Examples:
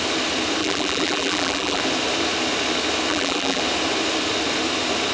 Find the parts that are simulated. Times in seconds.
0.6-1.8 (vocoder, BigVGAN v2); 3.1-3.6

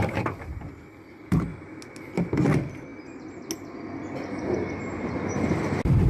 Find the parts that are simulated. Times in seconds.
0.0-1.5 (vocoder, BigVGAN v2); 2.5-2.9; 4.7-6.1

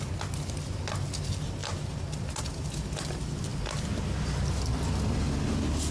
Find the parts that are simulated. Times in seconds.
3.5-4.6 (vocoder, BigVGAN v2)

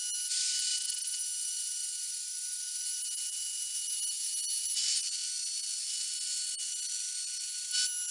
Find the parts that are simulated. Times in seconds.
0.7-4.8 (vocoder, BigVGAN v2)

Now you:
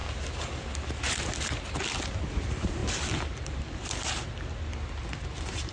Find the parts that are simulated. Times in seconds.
2.3-5.7 (vocoder, BigVGAN v2)